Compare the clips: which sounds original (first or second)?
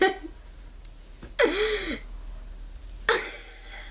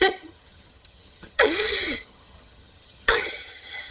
first